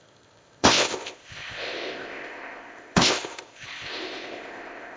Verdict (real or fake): fake